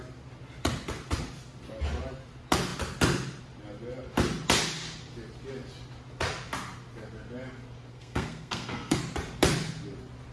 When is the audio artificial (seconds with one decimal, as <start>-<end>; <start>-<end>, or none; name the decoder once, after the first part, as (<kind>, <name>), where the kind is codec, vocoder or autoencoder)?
7.9-9.0 (codec, SNAC)